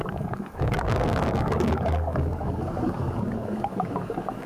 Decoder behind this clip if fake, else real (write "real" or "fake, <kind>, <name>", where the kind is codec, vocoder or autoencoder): fake, codec, DAC